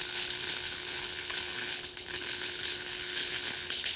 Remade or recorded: remade